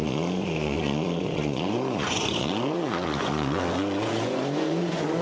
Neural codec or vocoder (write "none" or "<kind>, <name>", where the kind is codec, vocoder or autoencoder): vocoder, Vocos